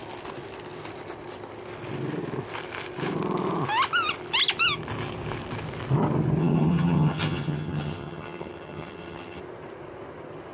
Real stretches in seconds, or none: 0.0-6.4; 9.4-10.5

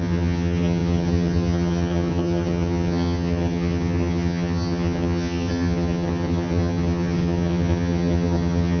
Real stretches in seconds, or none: none

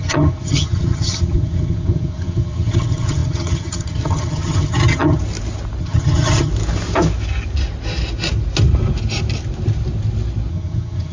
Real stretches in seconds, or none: 5.2-5.8; 6.5-10.5

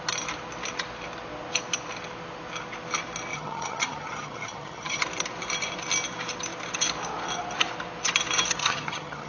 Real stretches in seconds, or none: 0.0-3.3; 5.0-8.6

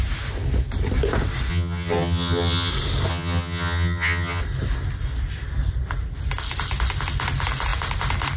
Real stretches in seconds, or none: 0.0-1.5; 2.7-3.1; 4.4-8.4

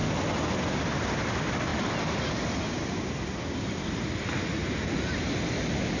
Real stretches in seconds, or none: 0.0-6.0

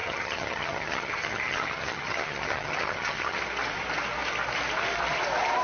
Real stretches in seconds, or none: 3.4-5.6

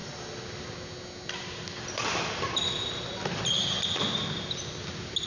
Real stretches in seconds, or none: 0.0-5.3